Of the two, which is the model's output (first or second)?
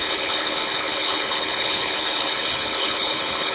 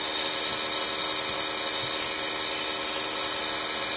first